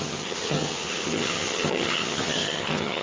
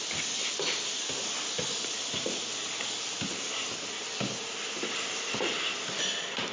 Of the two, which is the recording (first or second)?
second